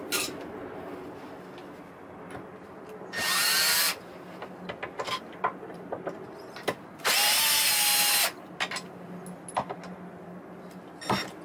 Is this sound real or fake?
real